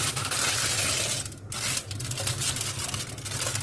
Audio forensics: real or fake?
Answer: real